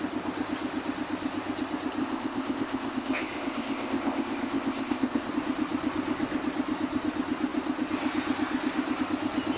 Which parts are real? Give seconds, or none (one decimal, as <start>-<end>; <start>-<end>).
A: 0.0-2.0; 5.3-9.6